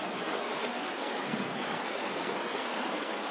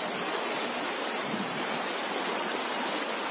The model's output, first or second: first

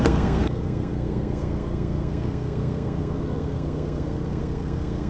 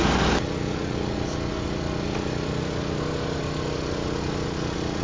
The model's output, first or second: first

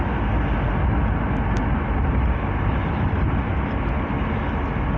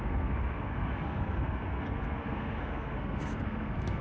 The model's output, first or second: second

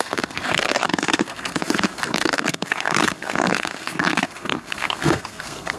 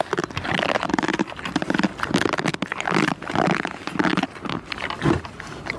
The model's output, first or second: first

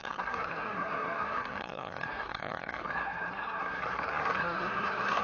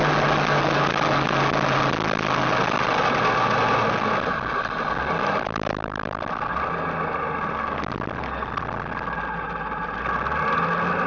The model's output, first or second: first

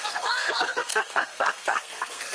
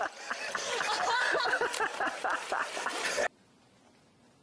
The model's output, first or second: first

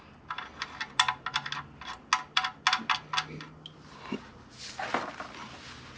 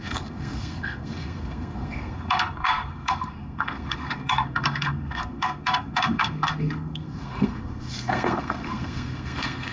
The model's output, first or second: second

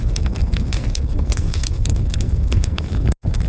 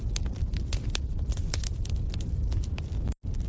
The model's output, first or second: first